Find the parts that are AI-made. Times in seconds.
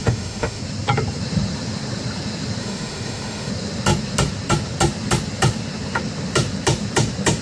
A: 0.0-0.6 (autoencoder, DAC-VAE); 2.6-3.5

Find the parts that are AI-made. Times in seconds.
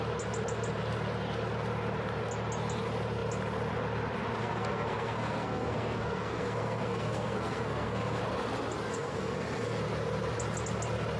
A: 4.4-8.2 (codec, SNAC); 8.9-9.8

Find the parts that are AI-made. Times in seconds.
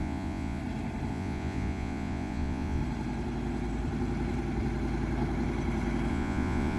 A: 0.0-0.6 (vocoder, Vocos); 1.1-2.8; 6.1-6.8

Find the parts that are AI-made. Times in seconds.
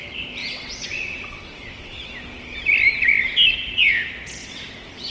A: 0.4-2.1 (vocoder, WaveNeXt); 4.4-5.1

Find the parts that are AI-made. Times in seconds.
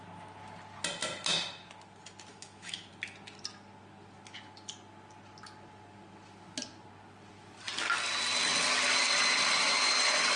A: 2.3-2.9 (autoencoder, DAC-VAE)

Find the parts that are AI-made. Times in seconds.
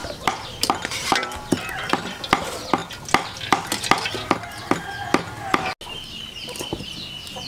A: 0.0-1.4 (vocoder, BigVGAN v2)